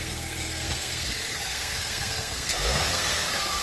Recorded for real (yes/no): no